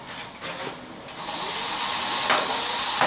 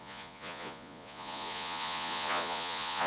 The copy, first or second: second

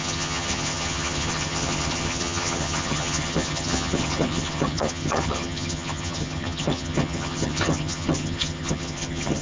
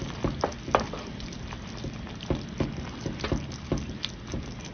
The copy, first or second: first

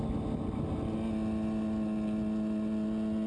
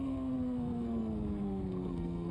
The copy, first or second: second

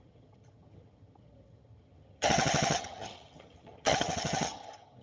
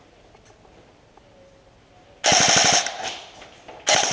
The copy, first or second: first